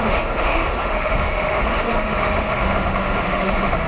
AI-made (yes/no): yes